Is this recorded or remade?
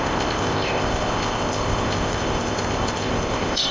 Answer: remade